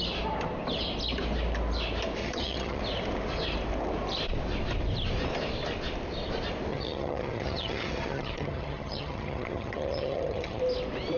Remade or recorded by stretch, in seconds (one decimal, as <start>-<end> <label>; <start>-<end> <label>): 0.0-2.2 recorded; 2.2-2.8 remade; 2.8-6.7 recorded; 6.7-10.6 remade; 10.6-11.2 recorded